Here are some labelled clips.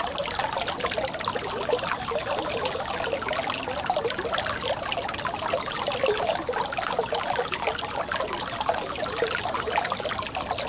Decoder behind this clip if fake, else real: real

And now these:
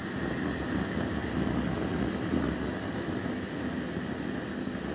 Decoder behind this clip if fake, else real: real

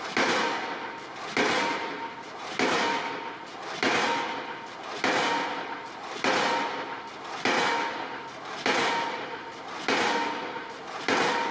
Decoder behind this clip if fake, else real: real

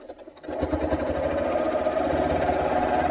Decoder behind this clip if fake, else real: real